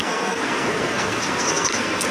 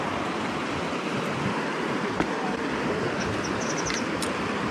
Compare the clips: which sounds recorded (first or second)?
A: second